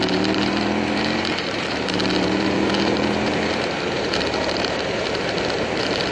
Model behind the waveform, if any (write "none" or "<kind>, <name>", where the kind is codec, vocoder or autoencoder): vocoder, BigVGAN v2